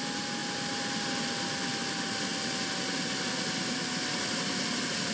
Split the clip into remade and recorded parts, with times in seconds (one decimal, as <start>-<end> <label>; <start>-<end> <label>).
0.0-0.4 recorded; 0.4-1.2 remade; 1.2-5.1 recorded